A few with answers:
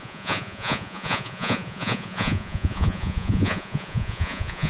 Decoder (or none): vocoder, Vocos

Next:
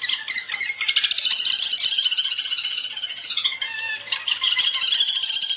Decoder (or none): none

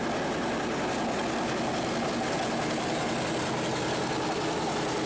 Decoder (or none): none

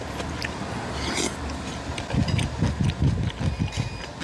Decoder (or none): none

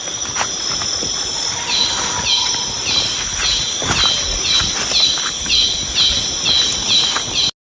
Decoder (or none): none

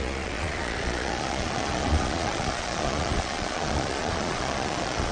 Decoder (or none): vocoder, Vocos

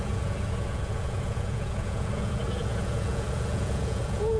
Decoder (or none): vocoder, Vocos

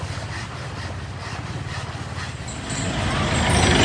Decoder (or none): none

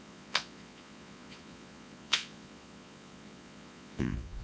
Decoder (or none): vocoder, Vocos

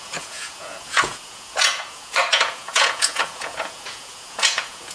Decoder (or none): vocoder, Vocos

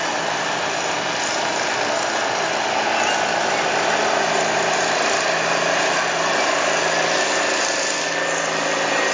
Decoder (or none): none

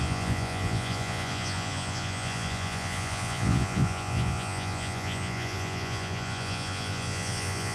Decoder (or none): vocoder, Vocos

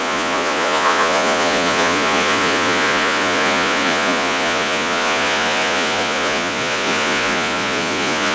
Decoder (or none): vocoder, Vocos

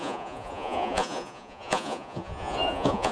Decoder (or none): vocoder, Vocos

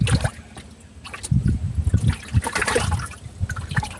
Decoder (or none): none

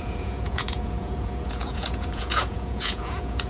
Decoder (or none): vocoder, Vocos